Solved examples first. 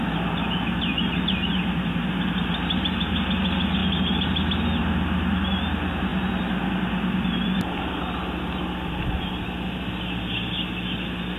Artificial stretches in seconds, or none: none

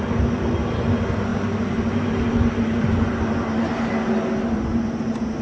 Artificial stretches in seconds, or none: none

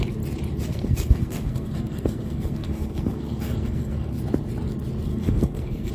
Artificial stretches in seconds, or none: 0.7-4.2; 5.1-5.9

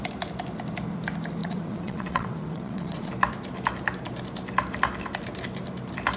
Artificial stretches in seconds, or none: 1.4-3.1

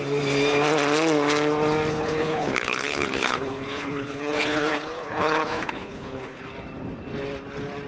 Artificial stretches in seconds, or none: 1.9-6.4

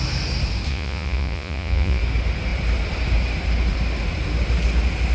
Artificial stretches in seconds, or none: 0.7-2.0

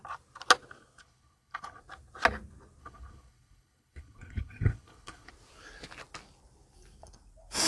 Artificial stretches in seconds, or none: 1.0-1.8; 2.8-5.3

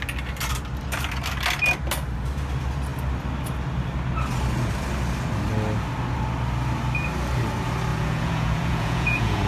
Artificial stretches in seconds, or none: 7.9-9.5